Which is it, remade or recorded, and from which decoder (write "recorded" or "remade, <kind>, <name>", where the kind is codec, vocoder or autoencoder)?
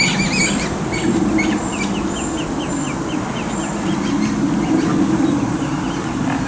recorded